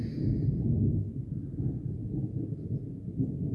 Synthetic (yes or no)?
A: no